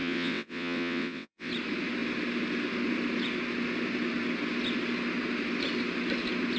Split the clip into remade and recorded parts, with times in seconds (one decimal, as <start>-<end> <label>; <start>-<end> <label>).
0.0-1.5 remade; 1.5-6.6 recorded